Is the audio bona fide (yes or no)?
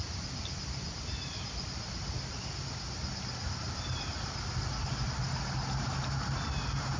yes